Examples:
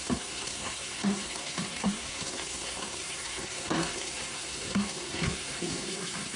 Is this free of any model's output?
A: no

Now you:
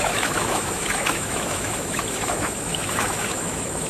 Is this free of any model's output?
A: no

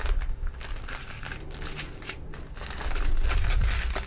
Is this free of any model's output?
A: yes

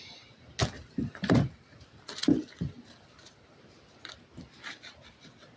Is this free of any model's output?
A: yes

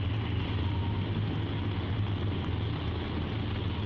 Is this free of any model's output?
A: yes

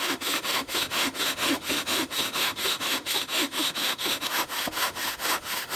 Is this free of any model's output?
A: no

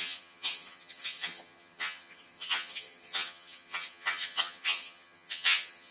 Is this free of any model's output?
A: no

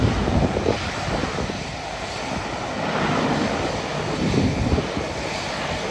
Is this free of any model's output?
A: yes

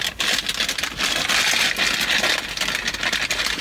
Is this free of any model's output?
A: yes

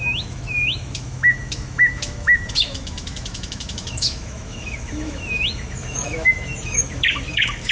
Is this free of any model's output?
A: no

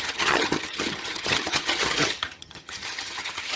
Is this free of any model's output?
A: no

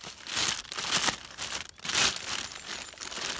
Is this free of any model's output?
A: yes